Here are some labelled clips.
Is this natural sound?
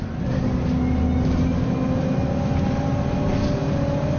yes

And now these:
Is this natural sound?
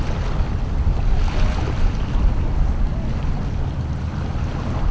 yes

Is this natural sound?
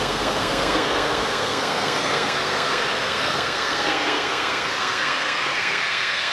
no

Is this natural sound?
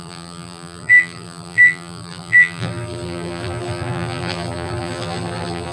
no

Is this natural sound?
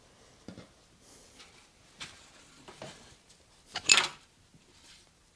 yes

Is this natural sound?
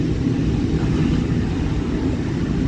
yes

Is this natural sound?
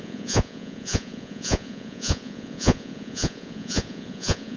no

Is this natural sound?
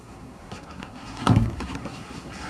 no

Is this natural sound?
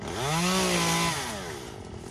yes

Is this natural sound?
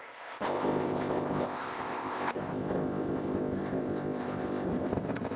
no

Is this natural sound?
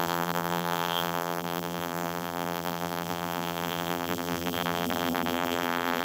no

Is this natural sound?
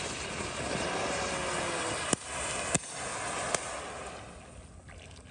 yes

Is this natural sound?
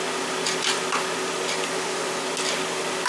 yes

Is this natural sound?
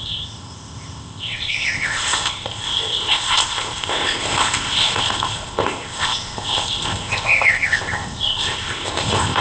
no